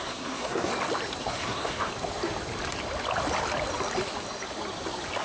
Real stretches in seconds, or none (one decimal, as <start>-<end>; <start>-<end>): 0.7-1.2; 1.9-5.2